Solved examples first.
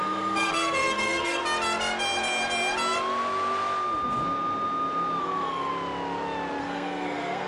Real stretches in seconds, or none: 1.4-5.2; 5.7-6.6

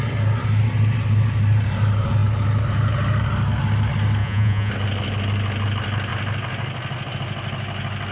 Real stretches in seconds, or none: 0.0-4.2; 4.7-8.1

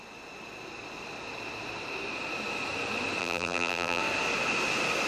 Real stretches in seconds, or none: 0.0-3.2; 4.0-5.1

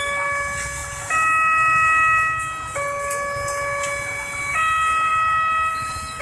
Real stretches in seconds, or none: 0.0-6.2

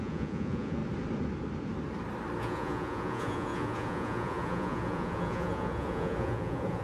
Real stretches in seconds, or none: 0.8-2.4

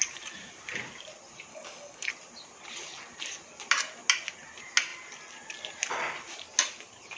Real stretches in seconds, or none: 0.0-1.5; 2.1-7.2

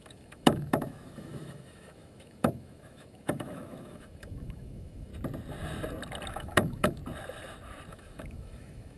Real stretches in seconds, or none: 5.1-6.3; 7.0-7.9